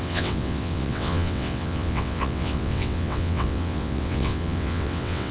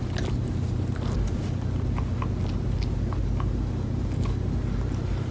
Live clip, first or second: second